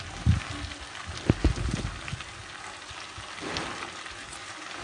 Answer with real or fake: real